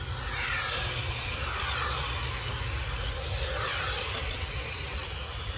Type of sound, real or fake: real